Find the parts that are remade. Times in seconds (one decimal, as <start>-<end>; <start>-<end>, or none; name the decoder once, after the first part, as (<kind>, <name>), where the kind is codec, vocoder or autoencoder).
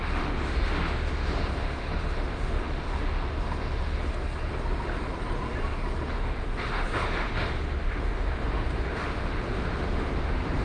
0.0-4.1 (autoencoder, DAC-VAE); 6.1-10.6